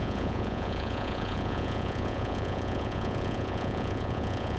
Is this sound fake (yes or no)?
yes